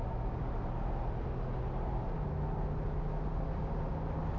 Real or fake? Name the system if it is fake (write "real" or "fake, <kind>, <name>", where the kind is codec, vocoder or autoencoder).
real